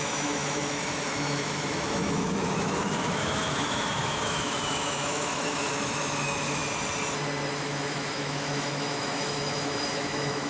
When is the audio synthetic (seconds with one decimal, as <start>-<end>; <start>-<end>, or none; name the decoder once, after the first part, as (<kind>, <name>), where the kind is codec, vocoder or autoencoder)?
0.0-6.6 (autoencoder, DAC-VAE); 7.5-10.5

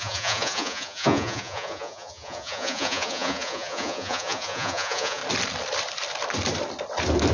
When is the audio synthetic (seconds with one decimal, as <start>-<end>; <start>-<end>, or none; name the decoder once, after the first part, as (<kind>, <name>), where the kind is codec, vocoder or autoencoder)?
0.0-5.2 (vocoder, Vocos)